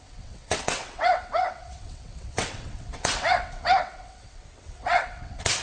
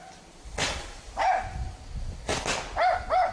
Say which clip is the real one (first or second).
second